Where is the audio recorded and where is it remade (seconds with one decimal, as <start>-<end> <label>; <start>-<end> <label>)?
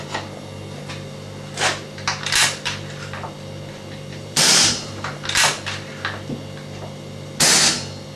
0.0-4.1 recorded; 4.1-4.9 remade; 4.9-8.2 recorded